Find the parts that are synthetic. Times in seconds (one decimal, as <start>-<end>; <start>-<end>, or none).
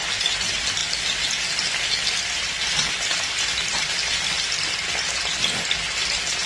none